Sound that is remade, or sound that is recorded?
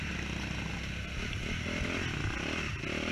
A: recorded